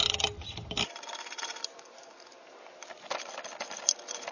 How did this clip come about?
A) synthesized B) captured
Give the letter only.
B